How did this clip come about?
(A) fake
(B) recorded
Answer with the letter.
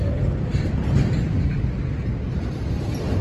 B